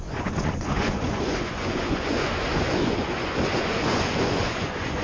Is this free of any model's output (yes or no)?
no